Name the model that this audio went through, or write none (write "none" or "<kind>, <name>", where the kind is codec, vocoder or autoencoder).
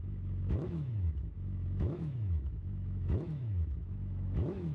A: autoencoder, DAC-VAE